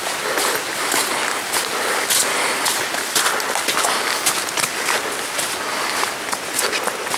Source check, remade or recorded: recorded